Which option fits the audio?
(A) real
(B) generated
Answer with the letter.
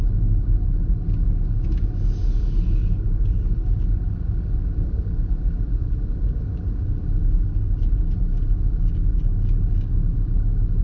A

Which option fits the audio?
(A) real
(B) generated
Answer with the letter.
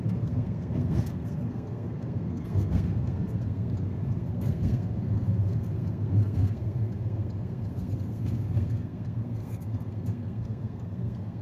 B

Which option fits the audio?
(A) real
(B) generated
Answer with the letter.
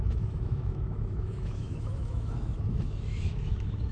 B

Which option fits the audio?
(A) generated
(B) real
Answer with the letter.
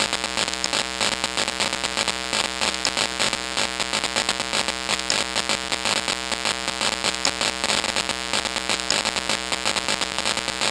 B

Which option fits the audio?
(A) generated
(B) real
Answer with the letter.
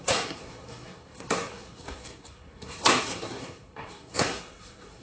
A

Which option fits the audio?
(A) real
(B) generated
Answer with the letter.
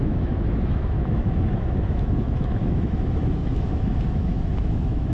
B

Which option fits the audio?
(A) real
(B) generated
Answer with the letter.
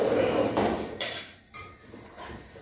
B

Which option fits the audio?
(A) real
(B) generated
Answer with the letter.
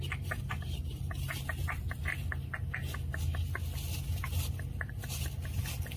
A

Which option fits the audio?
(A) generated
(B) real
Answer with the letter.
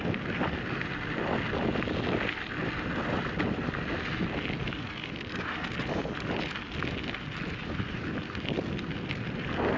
B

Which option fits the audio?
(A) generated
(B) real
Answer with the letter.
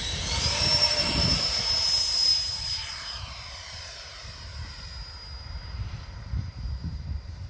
A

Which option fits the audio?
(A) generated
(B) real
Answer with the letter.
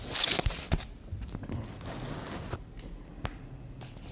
B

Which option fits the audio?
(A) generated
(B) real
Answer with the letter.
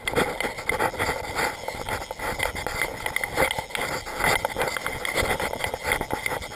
B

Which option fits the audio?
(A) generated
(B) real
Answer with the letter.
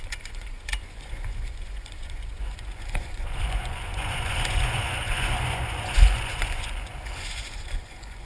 A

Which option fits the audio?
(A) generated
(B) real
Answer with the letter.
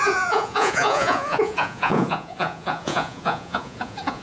A